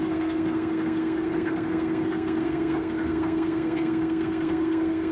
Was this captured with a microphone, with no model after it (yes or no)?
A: no